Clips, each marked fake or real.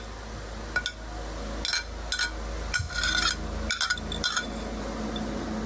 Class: real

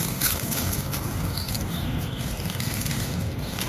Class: fake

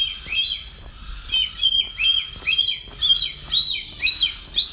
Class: real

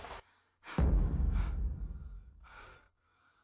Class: fake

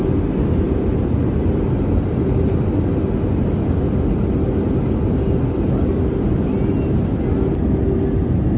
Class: real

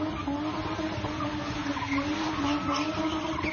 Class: real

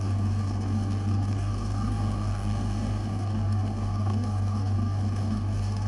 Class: fake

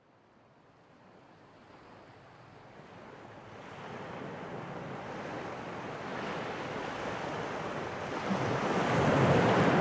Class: real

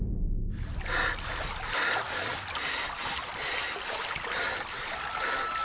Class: real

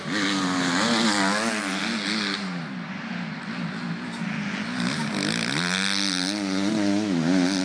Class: real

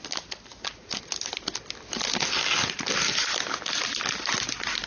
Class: real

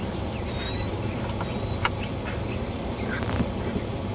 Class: real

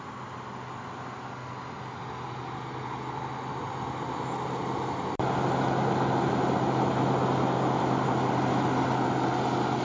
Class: real